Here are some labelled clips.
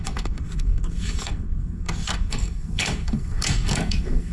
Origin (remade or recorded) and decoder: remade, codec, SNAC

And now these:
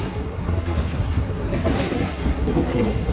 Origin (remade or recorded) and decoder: remade, codec, SNAC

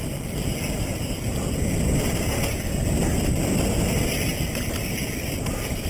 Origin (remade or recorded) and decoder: recorded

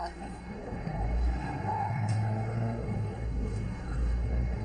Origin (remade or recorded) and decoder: remade, codec, SNAC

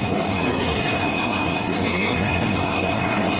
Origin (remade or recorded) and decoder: remade, codec, SNAC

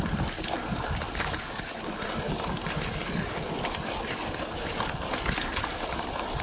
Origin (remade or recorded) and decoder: recorded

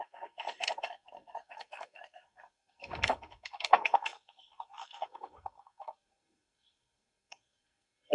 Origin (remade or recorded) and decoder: remade, codec, SNAC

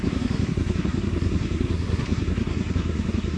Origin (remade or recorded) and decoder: remade, codec, SNAC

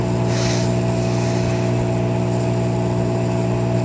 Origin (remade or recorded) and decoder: recorded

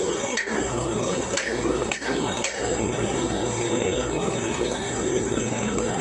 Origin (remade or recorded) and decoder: remade, codec, SNAC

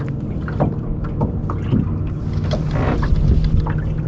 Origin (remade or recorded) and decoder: recorded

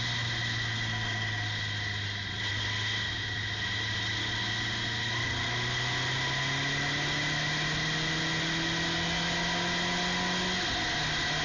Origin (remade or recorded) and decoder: recorded